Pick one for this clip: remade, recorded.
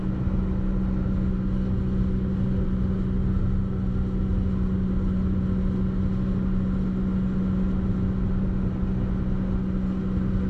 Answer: recorded